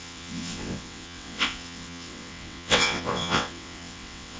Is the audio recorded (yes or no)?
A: no